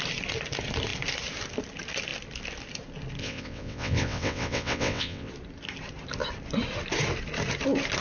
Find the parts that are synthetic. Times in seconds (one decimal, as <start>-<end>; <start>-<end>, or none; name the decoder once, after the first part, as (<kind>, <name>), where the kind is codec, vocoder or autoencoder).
3.2-5.3 (vocoder, WaveNeXt)